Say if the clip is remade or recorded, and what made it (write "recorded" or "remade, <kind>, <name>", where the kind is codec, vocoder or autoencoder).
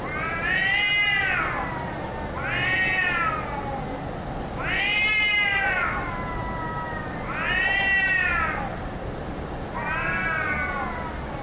recorded